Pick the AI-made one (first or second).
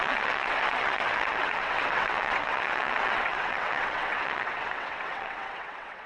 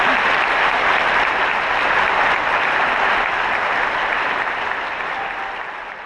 first